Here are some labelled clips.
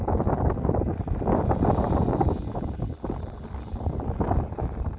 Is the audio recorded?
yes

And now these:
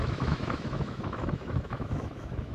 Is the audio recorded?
no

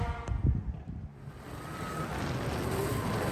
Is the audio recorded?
yes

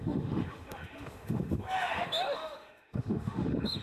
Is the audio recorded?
no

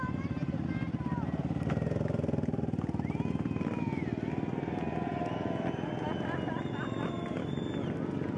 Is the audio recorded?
yes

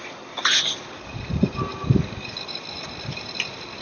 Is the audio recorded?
yes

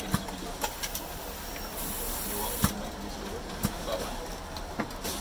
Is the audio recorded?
yes